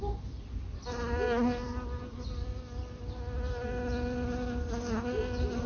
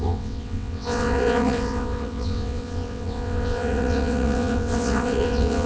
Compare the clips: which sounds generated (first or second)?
second